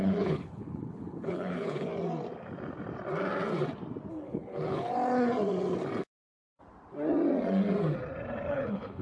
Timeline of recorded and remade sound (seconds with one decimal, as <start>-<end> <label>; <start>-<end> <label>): 0.0-1.9 remade; 1.9-4.1 recorded; 4.1-4.9 remade; 4.9-8.5 recorded; 8.5-9.0 remade